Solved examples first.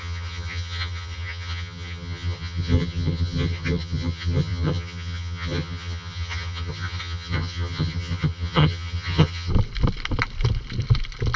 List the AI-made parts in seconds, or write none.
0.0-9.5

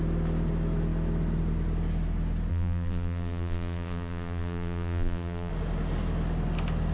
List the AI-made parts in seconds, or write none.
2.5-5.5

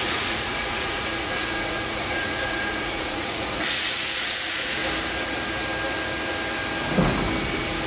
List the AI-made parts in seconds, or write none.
0.0-4.8

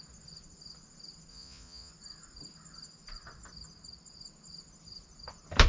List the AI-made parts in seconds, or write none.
1.3-1.9

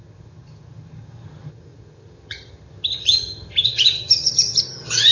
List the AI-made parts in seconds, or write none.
0.0-5.1

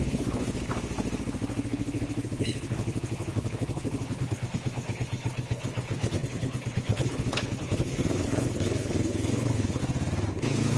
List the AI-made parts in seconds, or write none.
0.0-0.7; 1.7-9.8; 10.3-10.8

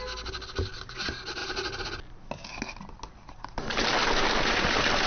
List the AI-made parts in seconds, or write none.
none